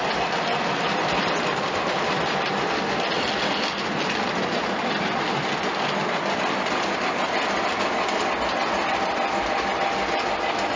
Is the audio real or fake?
real